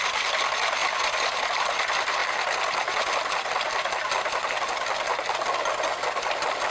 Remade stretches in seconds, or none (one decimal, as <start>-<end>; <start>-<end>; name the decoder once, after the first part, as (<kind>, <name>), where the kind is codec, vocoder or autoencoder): none